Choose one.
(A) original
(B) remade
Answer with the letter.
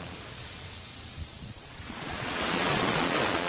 B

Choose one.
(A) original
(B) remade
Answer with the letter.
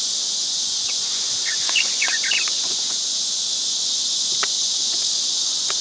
B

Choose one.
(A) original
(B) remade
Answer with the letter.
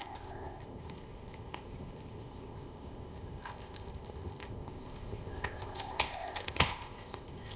B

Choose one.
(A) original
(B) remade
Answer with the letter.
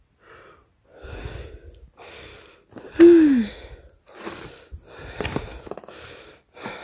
A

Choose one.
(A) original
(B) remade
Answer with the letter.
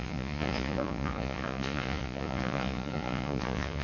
B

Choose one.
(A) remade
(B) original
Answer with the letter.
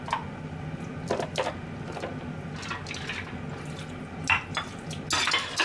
B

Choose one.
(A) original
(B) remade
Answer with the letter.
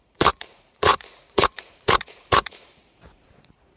B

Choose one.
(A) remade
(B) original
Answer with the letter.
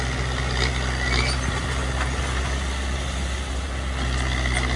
B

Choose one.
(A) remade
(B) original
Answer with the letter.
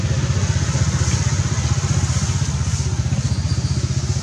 B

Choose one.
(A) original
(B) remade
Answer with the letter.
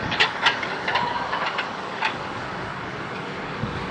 B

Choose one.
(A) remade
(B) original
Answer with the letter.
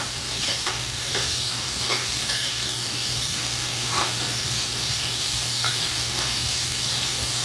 A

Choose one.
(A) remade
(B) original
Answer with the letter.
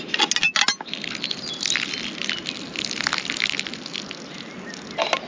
B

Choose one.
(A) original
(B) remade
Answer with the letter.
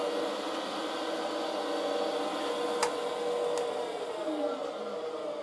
A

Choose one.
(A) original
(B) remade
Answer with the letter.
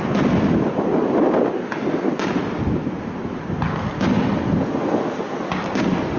A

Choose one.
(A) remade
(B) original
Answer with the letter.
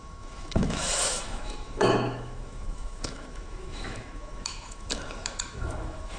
A